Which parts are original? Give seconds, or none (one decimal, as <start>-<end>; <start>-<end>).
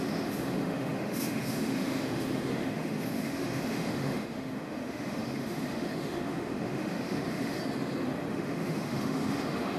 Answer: 7.6-8.3